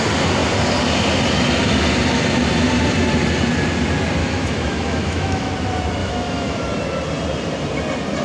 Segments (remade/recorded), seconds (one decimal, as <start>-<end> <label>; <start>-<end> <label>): 0.0-4.2 recorded; 4.2-5.5 remade; 5.5-6.0 recorded; 6.0-6.6 remade; 6.6-8.2 recorded